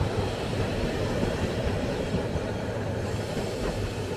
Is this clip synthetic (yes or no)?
yes